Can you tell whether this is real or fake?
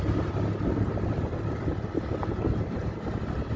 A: real